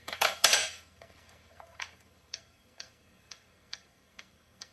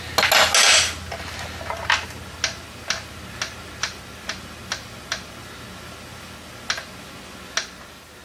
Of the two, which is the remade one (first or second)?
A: first